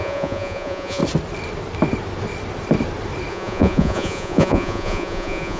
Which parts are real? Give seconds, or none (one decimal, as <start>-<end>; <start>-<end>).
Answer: 1.0-3.3